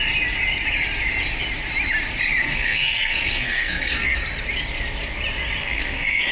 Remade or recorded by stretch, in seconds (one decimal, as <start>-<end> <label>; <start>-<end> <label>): 0.0-2.4 recorded; 2.4-4.2 remade; 4.2-5.6 recorded; 5.6-6.3 remade

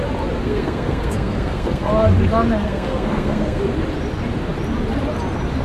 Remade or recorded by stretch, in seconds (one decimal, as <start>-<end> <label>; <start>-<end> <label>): 0.0-0.4 recorded; 0.4-1.9 remade; 1.9-2.6 recorded; 2.6-3.6 remade; 3.6-5.6 recorded

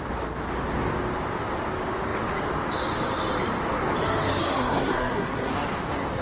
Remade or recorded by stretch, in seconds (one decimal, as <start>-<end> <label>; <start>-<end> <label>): 0.0-4.4 recorded; 4.4-5.5 remade; 5.5-6.2 recorded

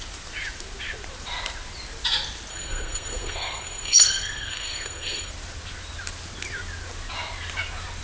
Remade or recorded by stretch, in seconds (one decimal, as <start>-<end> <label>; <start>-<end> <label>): 0.0-2.5 recorded; 2.5-5.3 remade; 5.3-8.0 recorded

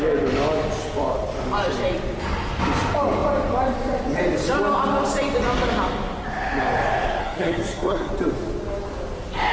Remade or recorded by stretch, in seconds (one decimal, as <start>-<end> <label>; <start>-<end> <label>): 0.0-7.2 recorded; 7.2-8.1 remade; 8.1-9.5 recorded

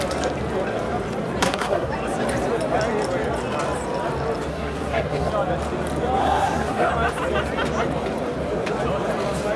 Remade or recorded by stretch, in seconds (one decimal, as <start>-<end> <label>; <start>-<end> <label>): 0.0-1.4 recorded; 1.4-1.9 remade; 1.9-4.5 recorded; 4.5-5.3 remade; 5.3-6.2 recorded; 6.2-6.9 remade; 6.9-9.6 recorded

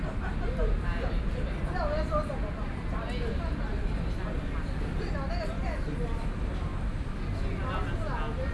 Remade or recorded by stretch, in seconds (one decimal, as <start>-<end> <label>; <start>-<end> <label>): 0.0-8.5 recorded

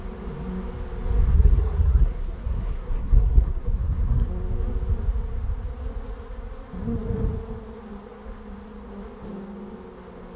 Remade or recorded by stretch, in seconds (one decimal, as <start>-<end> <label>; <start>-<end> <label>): 0.0-1.3 recorded; 1.3-4.3 remade; 4.3-10.4 recorded